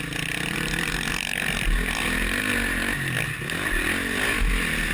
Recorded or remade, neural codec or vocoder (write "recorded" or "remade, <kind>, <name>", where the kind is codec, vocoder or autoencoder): recorded